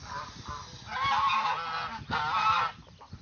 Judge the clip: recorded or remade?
recorded